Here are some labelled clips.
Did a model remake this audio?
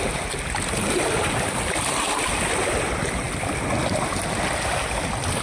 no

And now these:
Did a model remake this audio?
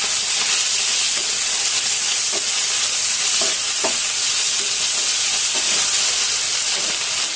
no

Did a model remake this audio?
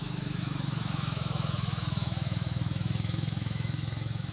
yes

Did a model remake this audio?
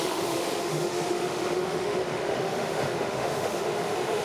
yes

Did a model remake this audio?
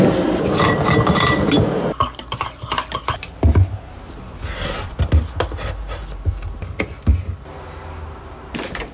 no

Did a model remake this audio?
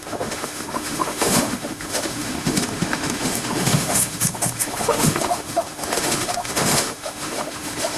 yes